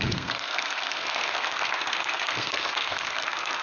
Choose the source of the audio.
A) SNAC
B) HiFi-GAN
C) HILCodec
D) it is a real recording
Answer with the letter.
A